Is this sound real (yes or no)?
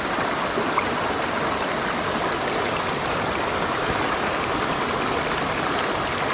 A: yes